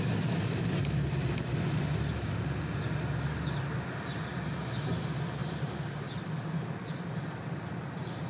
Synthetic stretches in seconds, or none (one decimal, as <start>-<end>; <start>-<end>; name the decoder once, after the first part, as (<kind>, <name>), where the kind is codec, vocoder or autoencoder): none